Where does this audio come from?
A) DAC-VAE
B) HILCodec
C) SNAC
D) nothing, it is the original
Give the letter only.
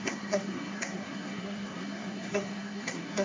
C